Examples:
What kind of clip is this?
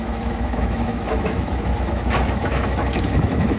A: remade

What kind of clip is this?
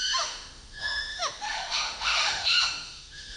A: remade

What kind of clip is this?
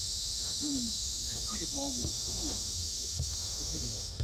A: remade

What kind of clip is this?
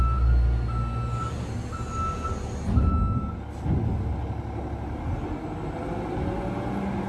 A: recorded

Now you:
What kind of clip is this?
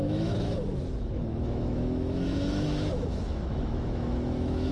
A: remade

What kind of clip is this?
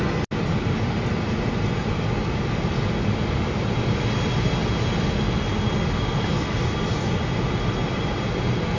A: recorded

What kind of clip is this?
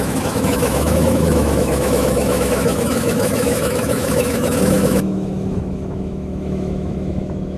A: remade